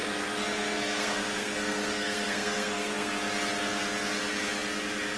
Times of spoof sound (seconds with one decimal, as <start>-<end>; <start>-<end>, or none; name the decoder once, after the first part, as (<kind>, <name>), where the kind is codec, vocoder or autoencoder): 0.0-3.1 (codec, SNAC)